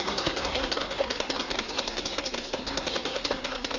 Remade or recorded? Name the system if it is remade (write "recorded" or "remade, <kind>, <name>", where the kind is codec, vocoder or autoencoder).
remade, codec, SNAC